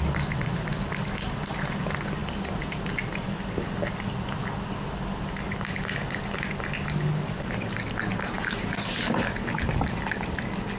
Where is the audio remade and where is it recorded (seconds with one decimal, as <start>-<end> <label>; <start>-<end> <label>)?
0.0-10.8 recorded